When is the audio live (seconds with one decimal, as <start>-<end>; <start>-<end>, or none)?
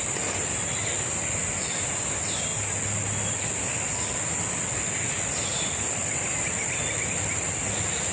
0.0-8.1